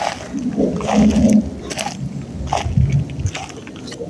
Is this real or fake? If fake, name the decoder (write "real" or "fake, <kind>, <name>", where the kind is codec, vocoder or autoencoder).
real